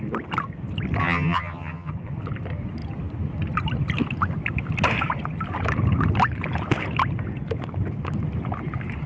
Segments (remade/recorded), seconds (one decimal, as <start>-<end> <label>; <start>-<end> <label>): 0.0-1.0 recorded; 1.0-1.9 remade; 1.9-9.1 recorded